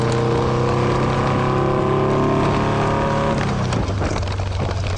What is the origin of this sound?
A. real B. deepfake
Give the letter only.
A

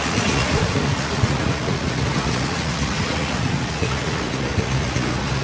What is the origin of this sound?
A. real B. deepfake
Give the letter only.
B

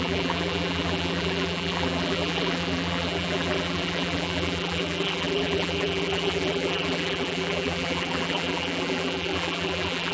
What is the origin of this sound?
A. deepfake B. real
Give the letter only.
A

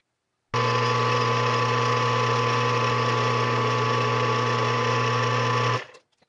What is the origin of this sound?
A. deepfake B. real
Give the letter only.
B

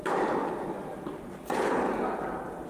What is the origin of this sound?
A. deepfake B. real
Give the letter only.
A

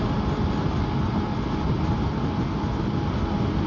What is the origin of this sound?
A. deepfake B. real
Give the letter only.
B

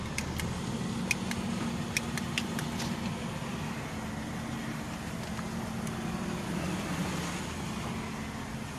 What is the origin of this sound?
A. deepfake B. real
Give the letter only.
B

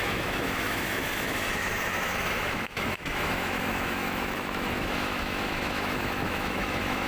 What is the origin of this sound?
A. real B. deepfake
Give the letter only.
B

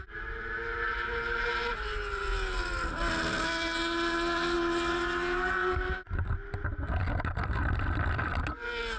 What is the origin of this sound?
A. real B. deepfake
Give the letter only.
A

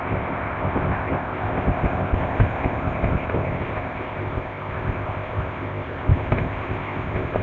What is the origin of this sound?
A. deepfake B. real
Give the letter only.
A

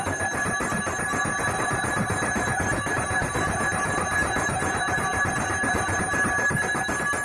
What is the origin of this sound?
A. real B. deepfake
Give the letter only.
A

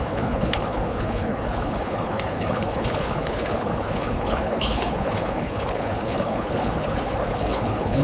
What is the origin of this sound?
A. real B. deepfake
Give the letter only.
B